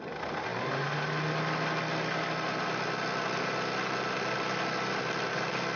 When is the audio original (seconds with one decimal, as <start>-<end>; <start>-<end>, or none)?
0.0-5.8